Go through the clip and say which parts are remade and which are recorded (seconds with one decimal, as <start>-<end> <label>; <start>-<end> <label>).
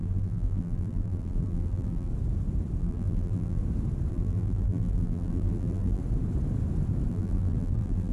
0.0-2.1 remade; 2.1-2.8 recorded; 2.8-3.6 remade; 3.6-4.1 recorded; 4.1-6.0 remade; 6.0-7.1 recorded; 7.1-8.1 remade